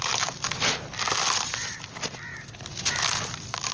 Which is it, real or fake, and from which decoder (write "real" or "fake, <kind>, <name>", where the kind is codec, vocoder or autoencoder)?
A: real